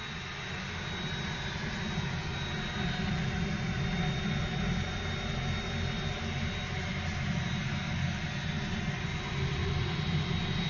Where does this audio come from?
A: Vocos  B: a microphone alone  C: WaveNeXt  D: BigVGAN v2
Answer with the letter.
B